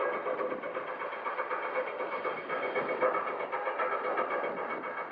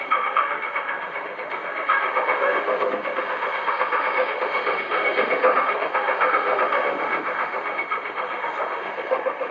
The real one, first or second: first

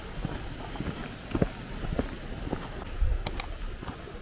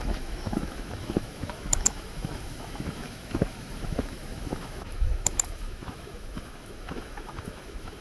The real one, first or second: first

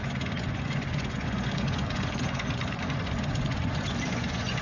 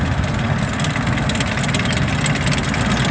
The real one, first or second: second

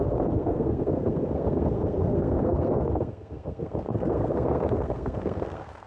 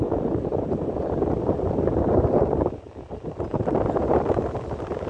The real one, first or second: second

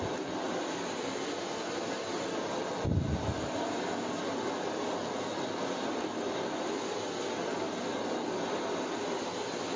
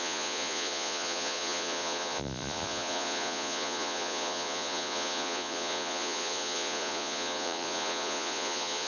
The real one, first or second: first